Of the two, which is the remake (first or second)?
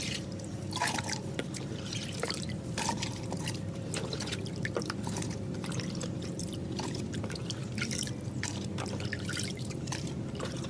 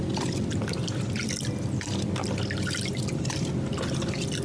first